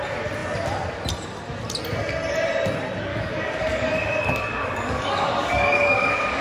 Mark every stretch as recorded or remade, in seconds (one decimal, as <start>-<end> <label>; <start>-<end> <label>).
0.0-3.1 recorded; 3.1-6.4 remade